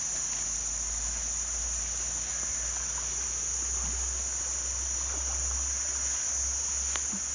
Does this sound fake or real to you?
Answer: real